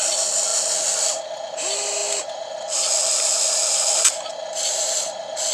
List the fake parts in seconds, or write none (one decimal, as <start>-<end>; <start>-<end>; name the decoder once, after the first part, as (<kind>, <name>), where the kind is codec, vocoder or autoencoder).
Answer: none

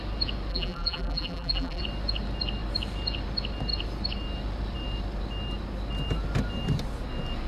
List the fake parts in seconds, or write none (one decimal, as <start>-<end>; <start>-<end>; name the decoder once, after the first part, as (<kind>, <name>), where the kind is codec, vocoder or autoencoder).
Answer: 0.5-1.8 (vocoder, BigVGAN v2)

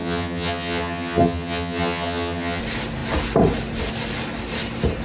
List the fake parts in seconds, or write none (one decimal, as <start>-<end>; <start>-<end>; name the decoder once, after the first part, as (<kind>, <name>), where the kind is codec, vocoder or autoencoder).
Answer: 0.0-2.6 (vocoder, HiFi-GAN)

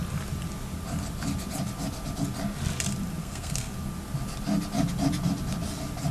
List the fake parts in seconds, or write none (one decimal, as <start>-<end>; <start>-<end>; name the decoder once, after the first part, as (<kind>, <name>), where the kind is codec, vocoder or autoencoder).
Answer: 3.2-3.7 (codec, SNAC)

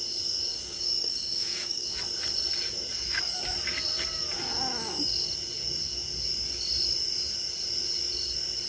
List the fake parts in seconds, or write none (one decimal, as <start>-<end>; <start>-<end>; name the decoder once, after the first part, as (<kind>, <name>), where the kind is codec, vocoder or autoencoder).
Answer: 0.5-1.9 (codec, DAC)

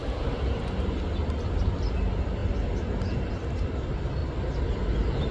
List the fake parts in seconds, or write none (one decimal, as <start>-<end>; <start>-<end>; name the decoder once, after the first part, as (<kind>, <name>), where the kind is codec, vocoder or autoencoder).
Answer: 2.4-3.3 (vocoder, BigVGAN v2); 4.2-5.3